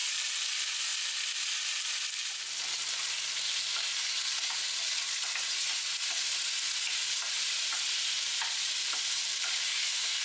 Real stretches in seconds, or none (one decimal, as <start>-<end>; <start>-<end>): 0.5-8.3; 9.1-10.2